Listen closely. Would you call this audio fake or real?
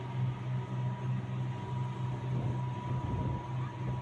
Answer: real